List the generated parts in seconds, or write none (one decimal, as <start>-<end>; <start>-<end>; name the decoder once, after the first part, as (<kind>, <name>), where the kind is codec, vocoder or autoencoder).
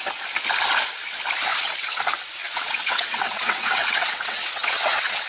1.5-2.0 (vocoder, WaveNeXt); 2.4-5.3